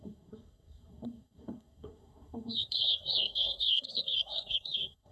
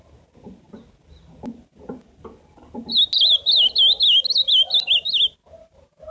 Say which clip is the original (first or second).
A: second